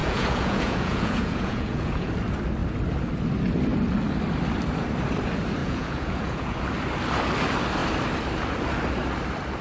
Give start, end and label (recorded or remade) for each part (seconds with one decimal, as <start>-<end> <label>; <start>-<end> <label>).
0.0-2.1 remade; 2.1-5.6 recorded; 5.6-6.6 remade; 6.6-9.6 recorded